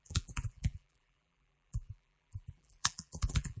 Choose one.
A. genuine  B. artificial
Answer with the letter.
B